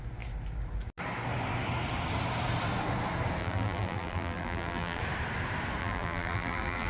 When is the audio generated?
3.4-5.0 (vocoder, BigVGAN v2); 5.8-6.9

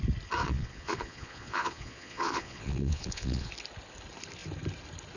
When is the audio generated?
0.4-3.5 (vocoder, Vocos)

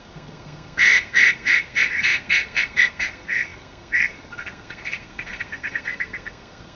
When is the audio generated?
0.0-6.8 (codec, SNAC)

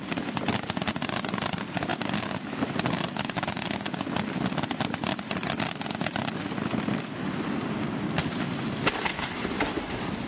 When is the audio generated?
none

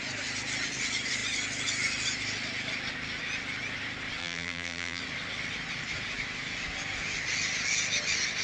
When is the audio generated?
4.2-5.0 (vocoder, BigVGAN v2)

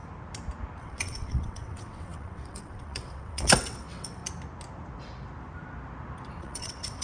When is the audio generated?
0.8-4.2 (vocoder, WaveNeXt); 6.4-7.0